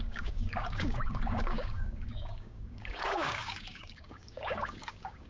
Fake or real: fake